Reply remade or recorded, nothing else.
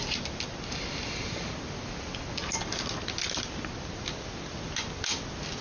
recorded